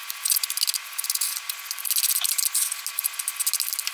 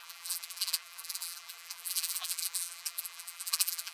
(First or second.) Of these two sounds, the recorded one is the first